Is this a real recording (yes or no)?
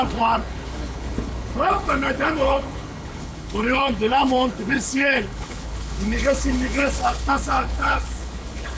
no